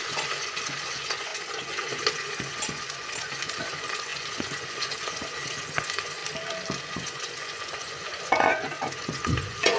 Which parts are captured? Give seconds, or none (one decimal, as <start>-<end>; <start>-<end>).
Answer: 6.2-6.8